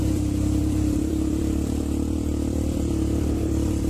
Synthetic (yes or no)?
yes